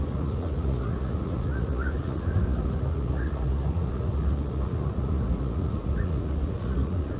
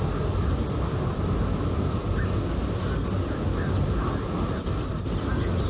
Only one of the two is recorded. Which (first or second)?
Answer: second